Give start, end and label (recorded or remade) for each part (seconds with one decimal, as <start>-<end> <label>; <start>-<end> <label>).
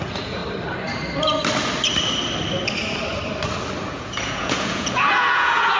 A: 0.0-0.4 remade; 0.4-3.9 recorded; 3.9-5.8 remade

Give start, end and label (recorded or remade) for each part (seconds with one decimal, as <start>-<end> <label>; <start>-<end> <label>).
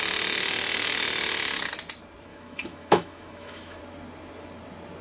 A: 0.0-2.3 recorded; 2.3-3.8 remade; 3.8-5.0 recorded